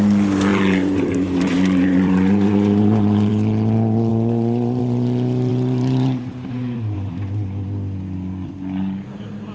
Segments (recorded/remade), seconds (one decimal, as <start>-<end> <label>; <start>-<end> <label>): 0.0-0.5 recorded; 0.5-3.3 remade; 3.3-4.1 recorded; 4.1-4.8 remade; 4.8-5.5 recorded; 5.5-7.1 remade; 7.1-9.5 recorded